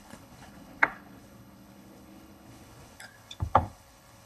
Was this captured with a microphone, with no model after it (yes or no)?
no